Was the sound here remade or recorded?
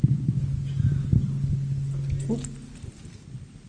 recorded